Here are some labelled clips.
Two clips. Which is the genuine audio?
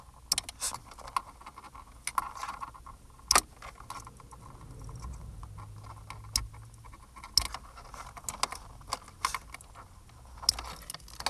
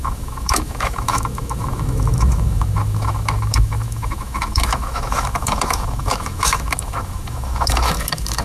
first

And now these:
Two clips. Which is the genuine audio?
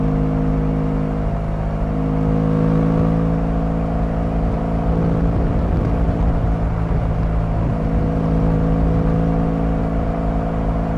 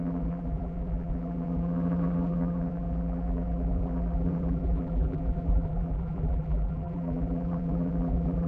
first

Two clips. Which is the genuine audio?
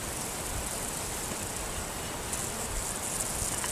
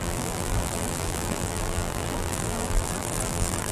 first